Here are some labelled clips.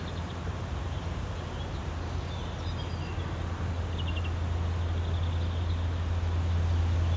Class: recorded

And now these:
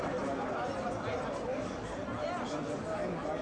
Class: recorded